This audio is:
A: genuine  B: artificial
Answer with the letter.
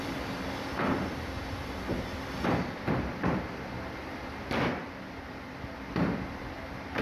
B